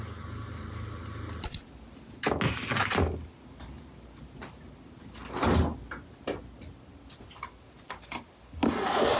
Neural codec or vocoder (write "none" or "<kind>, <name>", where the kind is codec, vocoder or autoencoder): none